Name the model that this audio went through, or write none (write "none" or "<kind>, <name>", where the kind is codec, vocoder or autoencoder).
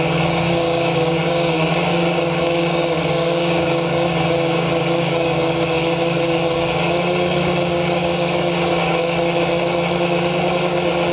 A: codec, DAC